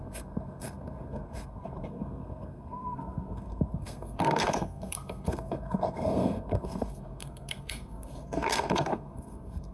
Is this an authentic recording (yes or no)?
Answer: no